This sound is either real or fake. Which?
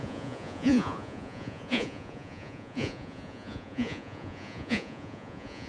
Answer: fake